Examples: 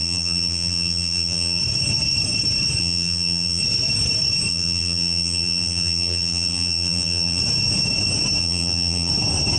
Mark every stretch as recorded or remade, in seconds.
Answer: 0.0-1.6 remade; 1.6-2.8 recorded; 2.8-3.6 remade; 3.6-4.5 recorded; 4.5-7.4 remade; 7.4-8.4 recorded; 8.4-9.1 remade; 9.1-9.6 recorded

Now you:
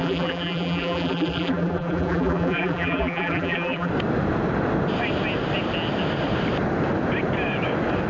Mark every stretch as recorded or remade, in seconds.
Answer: 0.0-3.9 remade; 3.9-8.1 recorded

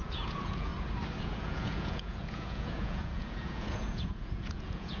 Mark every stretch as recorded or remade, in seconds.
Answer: 0.0-0.7 remade; 0.7-1.2 recorded; 1.2-5.0 remade

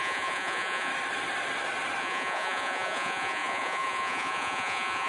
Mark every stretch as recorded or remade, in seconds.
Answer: 0.0-0.9 remade; 0.9-2.0 recorded; 2.0-5.1 remade